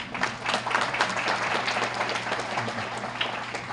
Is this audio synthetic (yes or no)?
no